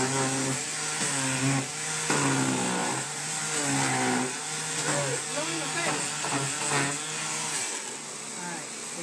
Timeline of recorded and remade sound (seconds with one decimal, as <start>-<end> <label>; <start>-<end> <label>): 0.0-2.8 recorded; 2.8-3.4 remade; 3.4-9.0 recorded